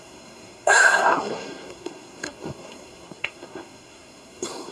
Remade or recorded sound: remade